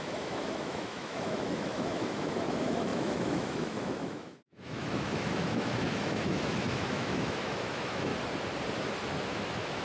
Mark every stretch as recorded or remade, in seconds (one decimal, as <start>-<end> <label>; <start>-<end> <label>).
0.0-8.1 remade; 8.1-9.3 recorded; 9.3-9.8 remade